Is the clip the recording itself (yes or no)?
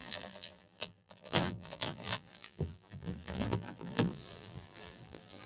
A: no